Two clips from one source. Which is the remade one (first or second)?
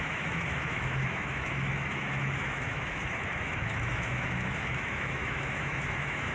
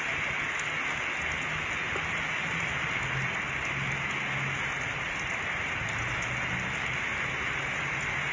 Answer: first